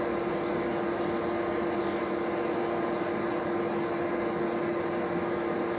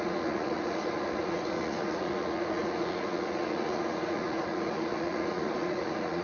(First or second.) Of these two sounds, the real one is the first